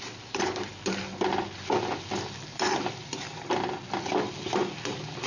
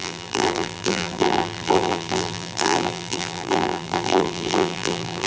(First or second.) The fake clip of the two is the second